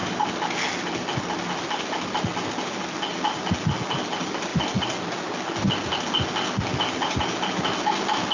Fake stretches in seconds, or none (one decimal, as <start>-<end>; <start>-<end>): none

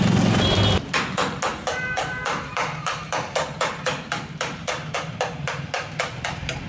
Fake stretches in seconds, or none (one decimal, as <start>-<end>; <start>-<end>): 1.5-5.5

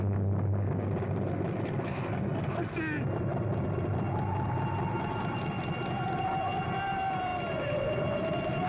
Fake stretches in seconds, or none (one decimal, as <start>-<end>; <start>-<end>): none